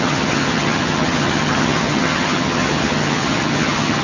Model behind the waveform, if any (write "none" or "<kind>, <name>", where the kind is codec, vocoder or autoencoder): vocoder, HiFi-GAN